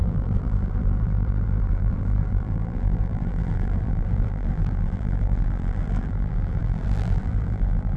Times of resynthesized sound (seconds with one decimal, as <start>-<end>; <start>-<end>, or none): 0.0-8.0